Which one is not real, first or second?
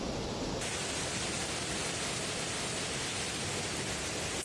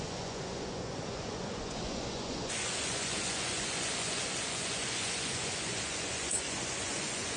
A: second